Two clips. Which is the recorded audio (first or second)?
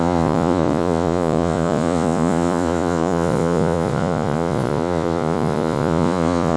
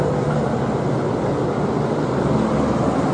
second